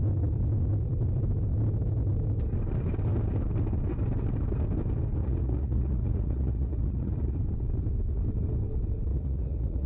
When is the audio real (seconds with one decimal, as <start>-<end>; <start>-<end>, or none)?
0.0-5.2; 7.4-9.1